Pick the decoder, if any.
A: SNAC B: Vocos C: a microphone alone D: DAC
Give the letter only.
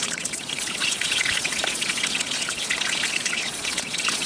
B